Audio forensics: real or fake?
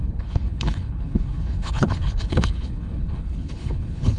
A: fake